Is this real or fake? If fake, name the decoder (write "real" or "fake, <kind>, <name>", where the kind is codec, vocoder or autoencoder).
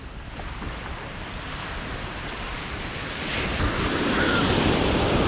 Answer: real